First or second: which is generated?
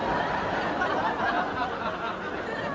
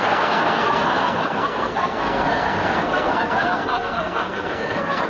second